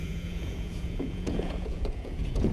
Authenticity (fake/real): fake